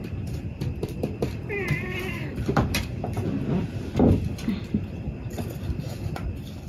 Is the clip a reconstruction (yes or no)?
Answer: yes